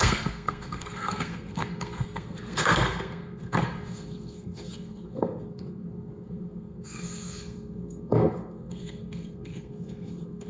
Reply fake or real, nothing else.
fake